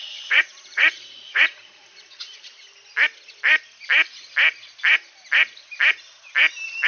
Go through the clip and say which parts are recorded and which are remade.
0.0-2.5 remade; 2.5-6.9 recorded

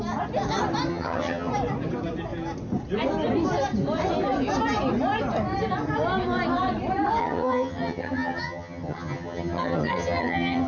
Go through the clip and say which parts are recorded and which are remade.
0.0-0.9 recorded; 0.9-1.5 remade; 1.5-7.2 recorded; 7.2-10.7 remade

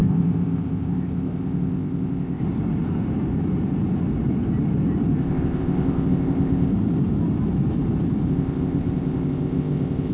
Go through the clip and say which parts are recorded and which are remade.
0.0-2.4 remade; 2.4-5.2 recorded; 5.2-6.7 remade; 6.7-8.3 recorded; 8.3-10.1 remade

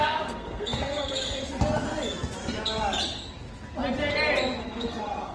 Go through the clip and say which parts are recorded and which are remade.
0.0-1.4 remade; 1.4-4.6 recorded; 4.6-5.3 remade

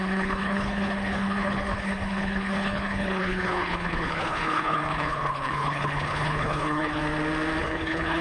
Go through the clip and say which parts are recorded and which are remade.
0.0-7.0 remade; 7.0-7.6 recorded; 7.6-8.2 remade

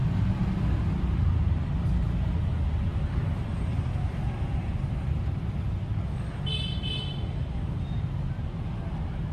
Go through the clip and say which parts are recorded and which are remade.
0.0-9.3 recorded

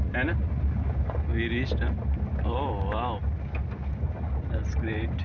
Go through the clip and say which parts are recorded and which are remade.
0.0-5.2 recorded

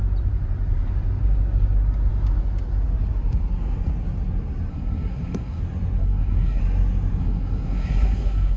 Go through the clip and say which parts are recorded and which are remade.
0.0-4.7 recorded; 4.7-5.6 remade; 5.6-6.0 recorded; 6.0-6.6 remade; 6.6-7.2 recorded; 7.2-8.6 remade